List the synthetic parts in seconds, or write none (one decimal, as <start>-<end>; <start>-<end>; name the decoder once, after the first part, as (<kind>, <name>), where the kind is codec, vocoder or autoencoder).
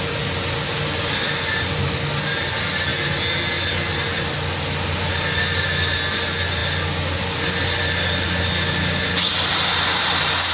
none